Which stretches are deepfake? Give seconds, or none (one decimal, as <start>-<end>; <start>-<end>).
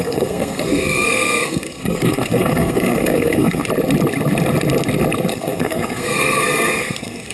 0.0-3.6; 5.3-7.3